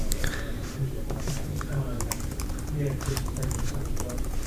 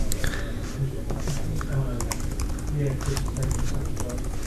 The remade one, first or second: first